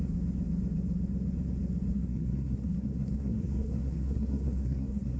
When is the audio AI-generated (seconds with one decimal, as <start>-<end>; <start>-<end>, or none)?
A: 1.9-5.2